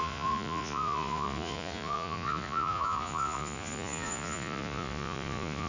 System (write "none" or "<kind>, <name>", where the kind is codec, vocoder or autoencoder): vocoder, Vocos